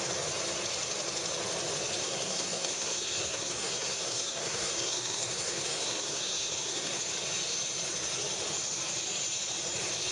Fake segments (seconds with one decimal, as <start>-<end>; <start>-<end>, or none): 2.0-7.0